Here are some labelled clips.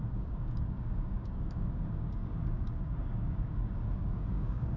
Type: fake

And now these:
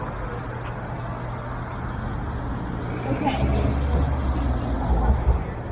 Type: real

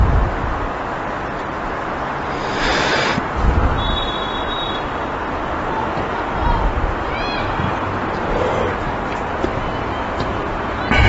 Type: fake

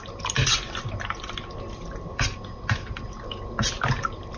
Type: real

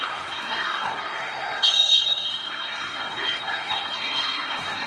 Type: fake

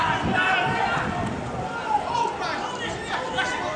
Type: real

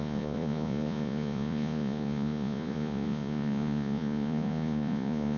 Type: fake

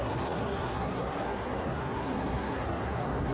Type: fake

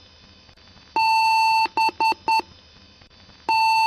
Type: real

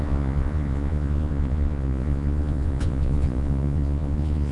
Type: fake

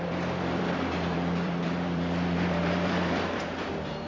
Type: fake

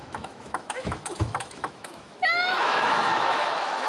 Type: fake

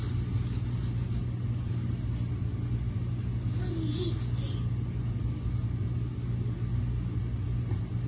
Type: real